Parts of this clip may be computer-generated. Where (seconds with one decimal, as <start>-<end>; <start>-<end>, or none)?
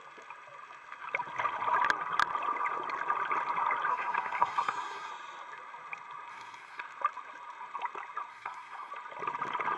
3.9-5.1; 6.3-6.8; 8.3-8.9